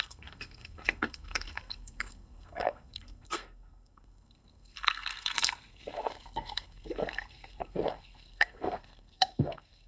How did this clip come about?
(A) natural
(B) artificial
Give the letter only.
B